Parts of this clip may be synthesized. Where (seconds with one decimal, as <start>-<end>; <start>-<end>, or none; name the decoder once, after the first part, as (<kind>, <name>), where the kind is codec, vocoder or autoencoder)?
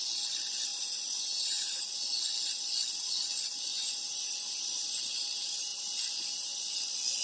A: 0.7-1.8 (vocoder, Vocos); 3.7-4.6